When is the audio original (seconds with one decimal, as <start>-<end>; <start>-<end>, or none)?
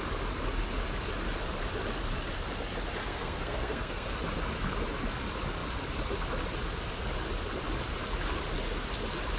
0.0-3.0; 4.1-9.4